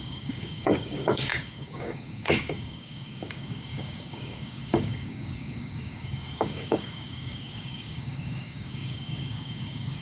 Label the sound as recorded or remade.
remade